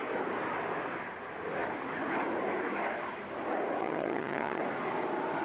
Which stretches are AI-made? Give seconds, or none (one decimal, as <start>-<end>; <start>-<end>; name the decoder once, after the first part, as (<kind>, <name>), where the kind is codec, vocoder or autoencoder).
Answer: 3.8-4.6 (vocoder, HiFi-GAN)